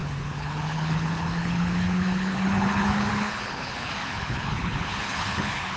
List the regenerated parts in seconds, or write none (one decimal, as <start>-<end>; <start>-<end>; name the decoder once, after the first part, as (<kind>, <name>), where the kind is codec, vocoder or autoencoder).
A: 0.0-5.8 (codec, HILCodec)